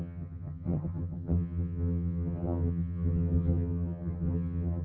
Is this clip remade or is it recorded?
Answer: remade